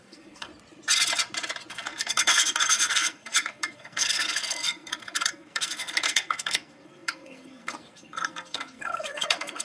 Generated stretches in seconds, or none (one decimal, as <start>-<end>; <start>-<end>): 0.0-0.5; 1.7-9.6